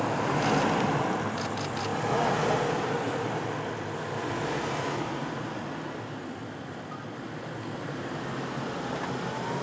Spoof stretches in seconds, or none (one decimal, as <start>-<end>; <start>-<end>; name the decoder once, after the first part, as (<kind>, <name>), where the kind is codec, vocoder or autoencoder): none